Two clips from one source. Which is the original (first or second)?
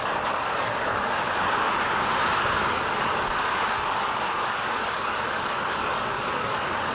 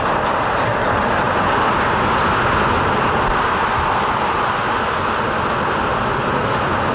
second